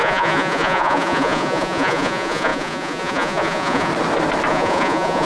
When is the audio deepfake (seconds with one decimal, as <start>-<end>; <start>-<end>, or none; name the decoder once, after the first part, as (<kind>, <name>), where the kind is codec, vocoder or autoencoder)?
0.0-3.9 (vocoder, Vocos); 4.5-5.3